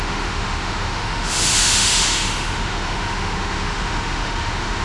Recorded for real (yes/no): no